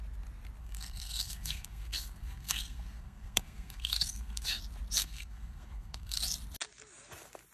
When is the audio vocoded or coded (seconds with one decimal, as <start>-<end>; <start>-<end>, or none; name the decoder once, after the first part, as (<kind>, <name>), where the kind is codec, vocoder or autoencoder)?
0.6-4.6 (codec, SNAC); 5.0-6.2